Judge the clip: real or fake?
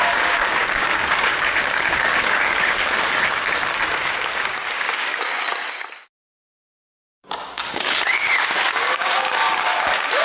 fake